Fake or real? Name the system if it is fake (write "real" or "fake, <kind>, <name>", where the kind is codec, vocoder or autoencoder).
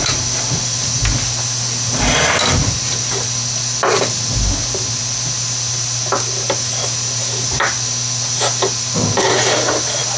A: real